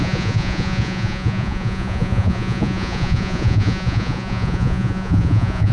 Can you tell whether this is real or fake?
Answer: fake